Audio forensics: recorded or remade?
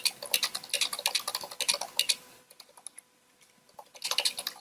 recorded